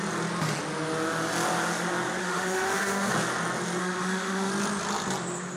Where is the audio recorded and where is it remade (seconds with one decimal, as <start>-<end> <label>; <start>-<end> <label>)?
0.0-2.2 recorded; 2.2-3.1 remade; 3.1-3.8 recorded; 3.8-4.5 remade; 4.5-5.6 recorded